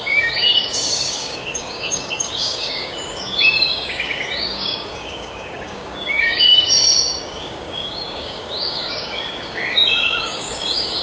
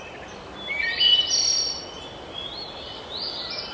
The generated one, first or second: first